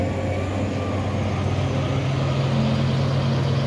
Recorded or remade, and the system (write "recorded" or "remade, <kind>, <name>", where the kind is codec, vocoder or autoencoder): recorded